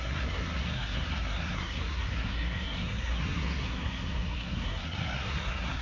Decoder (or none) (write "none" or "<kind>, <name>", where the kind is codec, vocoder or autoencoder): codec, SNAC